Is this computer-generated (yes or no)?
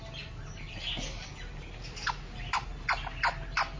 no